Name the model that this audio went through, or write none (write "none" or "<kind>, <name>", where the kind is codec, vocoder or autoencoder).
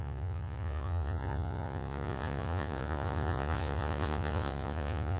vocoder, Vocos